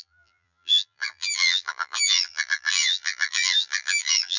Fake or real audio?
fake